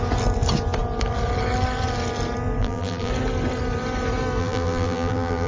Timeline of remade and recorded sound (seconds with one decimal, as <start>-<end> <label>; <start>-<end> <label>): 0.0-2.6 recorded; 2.6-3.1 remade; 3.1-4.4 recorded; 4.4-5.5 remade